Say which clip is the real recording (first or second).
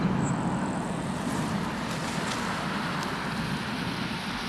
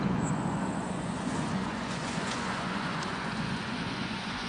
first